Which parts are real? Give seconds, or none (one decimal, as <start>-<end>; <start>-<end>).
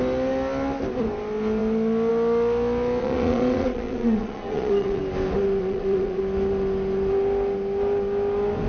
0.0-3.0; 5.0-5.6; 6.2-8.7